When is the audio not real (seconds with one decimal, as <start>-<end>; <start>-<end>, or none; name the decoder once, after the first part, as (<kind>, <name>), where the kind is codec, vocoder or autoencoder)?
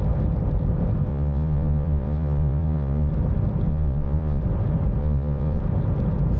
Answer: 1.1-3.1 (vocoder, Vocos); 3.7-4.4; 5.0-5.6